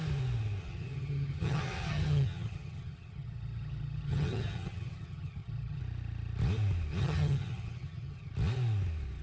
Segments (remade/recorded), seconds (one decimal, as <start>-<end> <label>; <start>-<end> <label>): 0.0-0.6 recorded; 0.6-5.8 remade; 5.8-7.0 recorded; 7.0-8.3 remade; 8.3-9.2 recorded